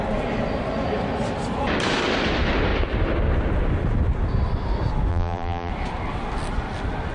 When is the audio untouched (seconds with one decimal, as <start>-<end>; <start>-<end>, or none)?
0.0-5.1; 5.7-7.1